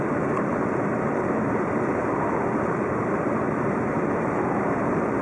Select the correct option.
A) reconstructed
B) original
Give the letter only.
A